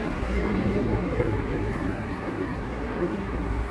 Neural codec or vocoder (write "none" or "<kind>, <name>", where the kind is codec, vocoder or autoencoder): codec, SNAC